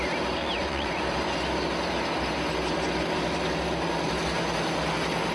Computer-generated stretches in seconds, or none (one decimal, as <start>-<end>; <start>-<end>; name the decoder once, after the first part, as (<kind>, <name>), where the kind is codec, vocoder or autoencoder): 0.4-1.0 (vocoder, Vocos)